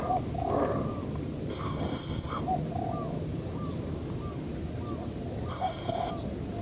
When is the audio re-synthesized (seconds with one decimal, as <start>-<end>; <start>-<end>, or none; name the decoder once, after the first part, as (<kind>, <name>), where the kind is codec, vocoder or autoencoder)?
1.5-2.4 (codec, HILCodec); 5.5-6.1